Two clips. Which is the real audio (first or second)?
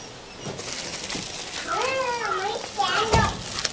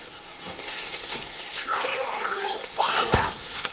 first